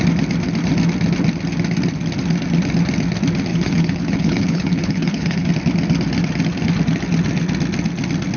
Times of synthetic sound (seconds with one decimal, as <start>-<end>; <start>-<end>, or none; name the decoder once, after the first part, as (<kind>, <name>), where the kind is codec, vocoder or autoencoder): 3.5-5.5 (codec, HILCodec)